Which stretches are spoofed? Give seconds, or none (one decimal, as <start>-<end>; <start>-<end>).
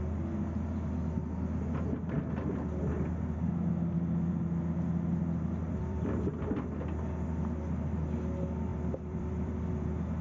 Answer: 5.6-6.3; 8.7-9.7